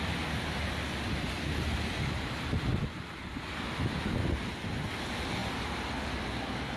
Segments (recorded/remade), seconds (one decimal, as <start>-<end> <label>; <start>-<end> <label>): 0.0-6.8 recorded